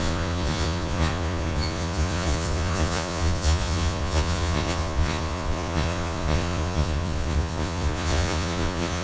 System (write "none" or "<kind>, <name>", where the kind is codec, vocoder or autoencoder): vocoder, Vocos